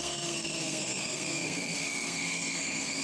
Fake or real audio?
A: fake